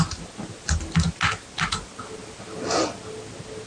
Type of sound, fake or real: real